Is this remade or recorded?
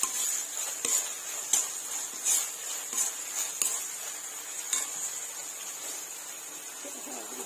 recorded